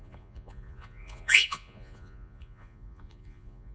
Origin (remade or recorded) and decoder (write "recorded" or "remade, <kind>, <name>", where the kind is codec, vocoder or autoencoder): remade, vocoder, Vocos